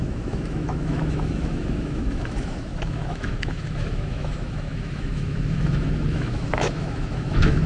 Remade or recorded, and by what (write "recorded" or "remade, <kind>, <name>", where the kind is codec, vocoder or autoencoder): remade, autoencoder, DAC-VAE